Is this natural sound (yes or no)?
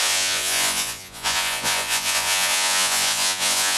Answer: no